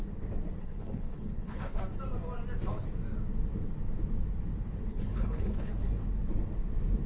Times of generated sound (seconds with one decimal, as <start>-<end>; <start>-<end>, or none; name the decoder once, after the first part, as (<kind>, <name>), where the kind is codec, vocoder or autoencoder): 0.6-1.8 (codec, HILCodec); 4.9-5.7